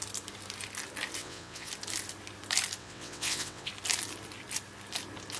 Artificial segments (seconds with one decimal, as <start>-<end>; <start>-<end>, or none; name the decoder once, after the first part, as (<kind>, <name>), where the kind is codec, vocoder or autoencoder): 1.2-1.7 (vocoder, WaveNeXt); 2.8-3.7